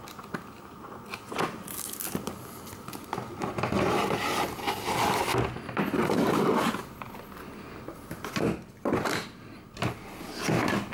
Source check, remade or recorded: recorded